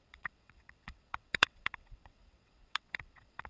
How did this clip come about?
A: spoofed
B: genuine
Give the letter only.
A